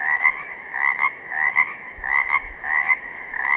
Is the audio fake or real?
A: fake